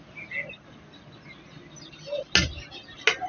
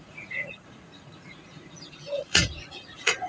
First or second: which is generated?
second